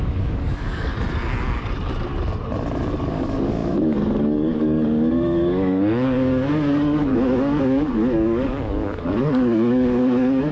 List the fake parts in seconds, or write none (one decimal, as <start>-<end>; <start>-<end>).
0.0-0.9; 3.0-10.5